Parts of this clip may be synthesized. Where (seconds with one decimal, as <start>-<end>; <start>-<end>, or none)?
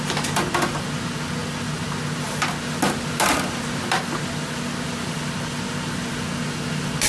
none